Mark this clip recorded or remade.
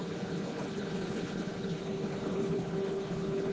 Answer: remade